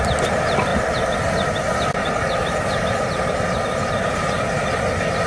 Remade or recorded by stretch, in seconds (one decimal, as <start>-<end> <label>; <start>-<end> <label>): 0.0-5.3 remade